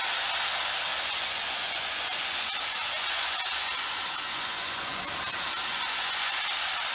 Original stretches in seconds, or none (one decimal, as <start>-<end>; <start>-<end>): 0.0-0.9; 5.0-5.7; 6.4-6.9